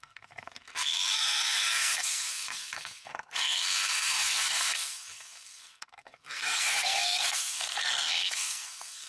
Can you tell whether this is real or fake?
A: fake